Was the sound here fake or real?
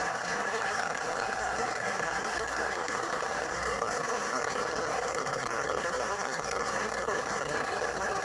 fake